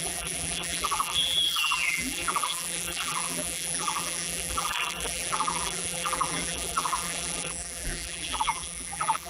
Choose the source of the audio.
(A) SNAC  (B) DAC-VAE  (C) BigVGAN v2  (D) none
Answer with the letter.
C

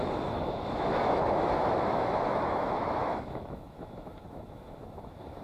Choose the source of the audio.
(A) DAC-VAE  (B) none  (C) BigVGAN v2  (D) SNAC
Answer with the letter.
A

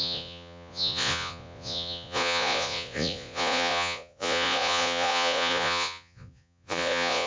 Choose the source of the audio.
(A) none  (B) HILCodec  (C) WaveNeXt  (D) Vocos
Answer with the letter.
D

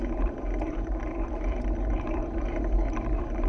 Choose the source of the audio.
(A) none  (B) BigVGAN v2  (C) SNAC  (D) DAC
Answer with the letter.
B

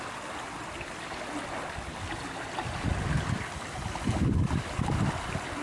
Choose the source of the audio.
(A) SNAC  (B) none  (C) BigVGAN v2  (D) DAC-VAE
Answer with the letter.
B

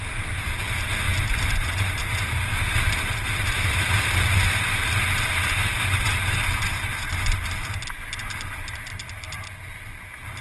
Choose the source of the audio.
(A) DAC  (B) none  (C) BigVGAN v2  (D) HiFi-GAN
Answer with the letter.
B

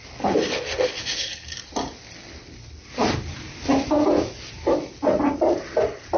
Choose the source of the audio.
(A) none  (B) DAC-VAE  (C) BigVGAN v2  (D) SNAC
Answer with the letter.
A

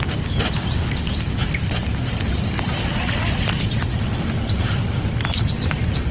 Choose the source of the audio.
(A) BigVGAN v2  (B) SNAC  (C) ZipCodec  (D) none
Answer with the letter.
A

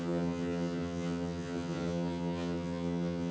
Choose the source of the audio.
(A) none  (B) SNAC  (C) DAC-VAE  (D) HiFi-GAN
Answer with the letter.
D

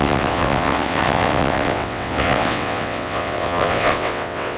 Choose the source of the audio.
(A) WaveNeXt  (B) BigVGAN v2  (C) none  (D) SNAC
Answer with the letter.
A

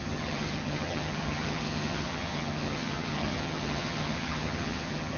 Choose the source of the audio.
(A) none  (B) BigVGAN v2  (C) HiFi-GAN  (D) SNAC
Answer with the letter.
C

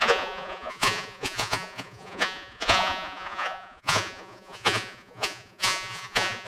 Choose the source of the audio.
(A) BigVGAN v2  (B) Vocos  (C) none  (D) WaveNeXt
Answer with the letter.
B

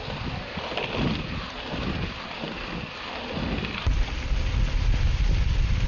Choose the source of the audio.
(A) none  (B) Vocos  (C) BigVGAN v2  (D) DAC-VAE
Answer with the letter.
A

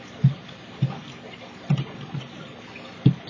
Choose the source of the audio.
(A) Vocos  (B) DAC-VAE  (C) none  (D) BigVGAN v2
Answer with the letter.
C